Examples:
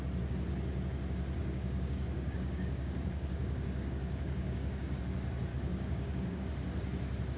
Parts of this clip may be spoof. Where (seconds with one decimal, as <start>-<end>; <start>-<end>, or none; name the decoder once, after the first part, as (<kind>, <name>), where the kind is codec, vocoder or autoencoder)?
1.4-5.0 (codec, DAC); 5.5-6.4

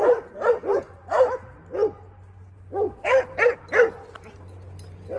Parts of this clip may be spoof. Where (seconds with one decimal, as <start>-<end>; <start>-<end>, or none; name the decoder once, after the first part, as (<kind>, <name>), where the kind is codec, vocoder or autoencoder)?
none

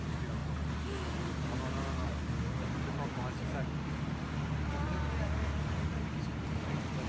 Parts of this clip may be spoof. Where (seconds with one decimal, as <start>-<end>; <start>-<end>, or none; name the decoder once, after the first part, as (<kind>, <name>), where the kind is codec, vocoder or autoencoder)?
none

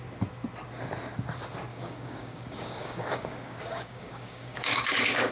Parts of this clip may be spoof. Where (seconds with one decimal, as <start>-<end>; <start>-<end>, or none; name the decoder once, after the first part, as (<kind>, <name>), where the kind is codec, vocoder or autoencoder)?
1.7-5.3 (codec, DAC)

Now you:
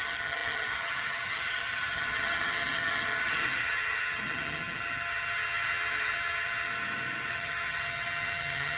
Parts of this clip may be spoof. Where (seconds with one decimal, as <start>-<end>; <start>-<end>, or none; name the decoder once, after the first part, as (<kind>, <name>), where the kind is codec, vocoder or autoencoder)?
0.0-6.7 (vocoder, HiFi-GAN); 7.3-8.8